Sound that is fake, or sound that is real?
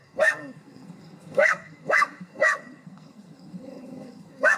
fake